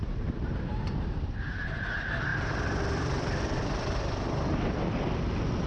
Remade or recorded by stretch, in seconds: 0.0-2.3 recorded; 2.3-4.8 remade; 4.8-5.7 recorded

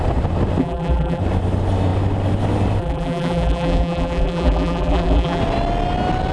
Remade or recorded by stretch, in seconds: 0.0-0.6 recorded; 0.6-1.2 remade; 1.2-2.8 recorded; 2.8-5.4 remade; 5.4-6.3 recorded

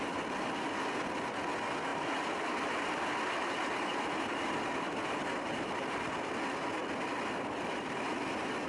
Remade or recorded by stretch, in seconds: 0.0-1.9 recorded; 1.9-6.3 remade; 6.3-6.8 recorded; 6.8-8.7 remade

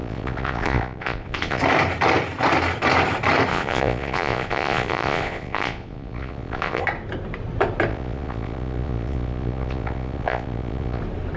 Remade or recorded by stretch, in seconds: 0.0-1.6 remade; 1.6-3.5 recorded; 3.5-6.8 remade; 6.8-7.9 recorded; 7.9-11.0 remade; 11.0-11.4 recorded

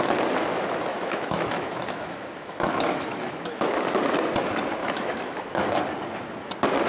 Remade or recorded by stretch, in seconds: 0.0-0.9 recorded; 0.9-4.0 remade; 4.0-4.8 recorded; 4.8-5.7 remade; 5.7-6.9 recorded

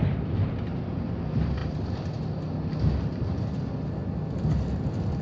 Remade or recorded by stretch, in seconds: 0.0-5.2 recorded

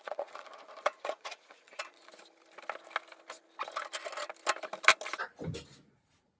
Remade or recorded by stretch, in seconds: 0.0-2.1 remade; 2.1-5.9 recorded; 5.9-6.4 remade